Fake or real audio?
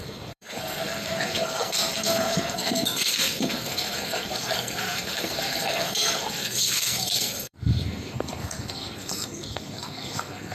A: fake